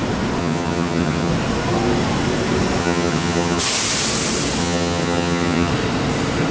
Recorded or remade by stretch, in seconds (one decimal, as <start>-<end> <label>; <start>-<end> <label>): 0.0-0.4 recorded; 0.4-1.3 remade; 1.3-2.8 recorded; 2.8-3.6 remade; 3.6-4.6 recorded; 4.6-5.7 remade; 5.7-6.5 recorded